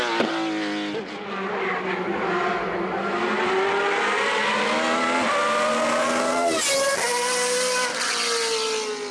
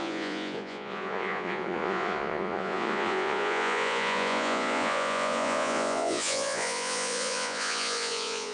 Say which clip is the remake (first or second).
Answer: second